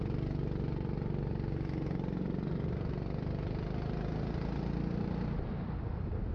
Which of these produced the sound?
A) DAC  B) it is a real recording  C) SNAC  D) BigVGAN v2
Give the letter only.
B